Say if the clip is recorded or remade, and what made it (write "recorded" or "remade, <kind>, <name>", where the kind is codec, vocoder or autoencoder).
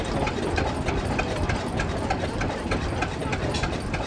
remade, vocoder, BigVGAN v2